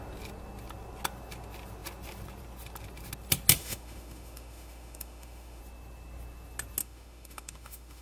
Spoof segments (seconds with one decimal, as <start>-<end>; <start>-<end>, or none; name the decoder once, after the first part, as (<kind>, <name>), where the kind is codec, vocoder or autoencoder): 3.6-5.6 (autoencoder, DAC-VAE); 6.8-8.0